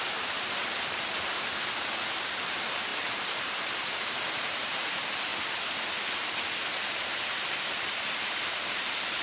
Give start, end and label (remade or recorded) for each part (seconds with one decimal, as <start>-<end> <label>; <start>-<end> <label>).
0.0-5.3 remade; 5.3-6.9 recorded; 6.9-9.2 remade